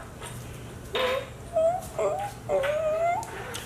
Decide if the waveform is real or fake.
real